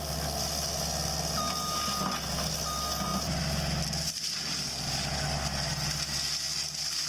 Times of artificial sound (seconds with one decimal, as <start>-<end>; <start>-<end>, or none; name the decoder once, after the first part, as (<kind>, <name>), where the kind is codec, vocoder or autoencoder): none